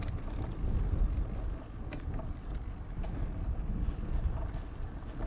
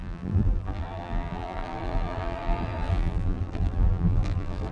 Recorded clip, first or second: first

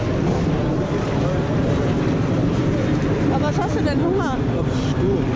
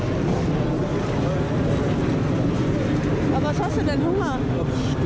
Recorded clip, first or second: second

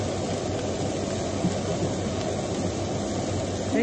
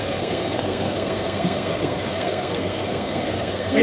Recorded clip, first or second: first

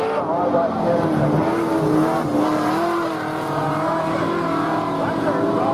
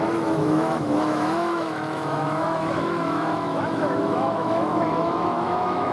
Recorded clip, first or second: first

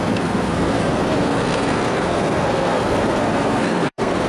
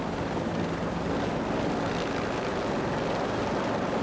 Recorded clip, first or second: second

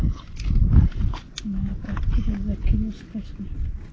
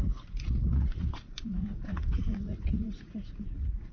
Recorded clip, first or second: first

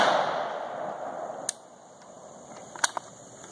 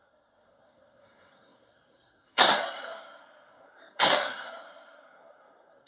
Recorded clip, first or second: first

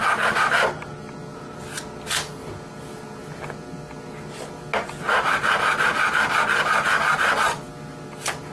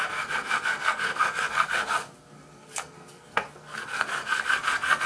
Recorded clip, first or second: first